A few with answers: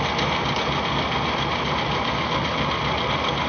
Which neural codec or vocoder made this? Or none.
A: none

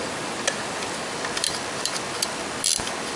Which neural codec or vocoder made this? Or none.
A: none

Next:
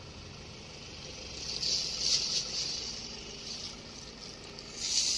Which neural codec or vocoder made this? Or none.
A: none